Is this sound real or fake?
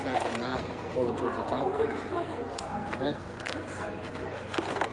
fake